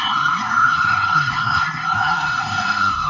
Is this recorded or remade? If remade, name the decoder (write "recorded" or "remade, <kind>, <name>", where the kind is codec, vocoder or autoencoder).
remade, codec, SNAC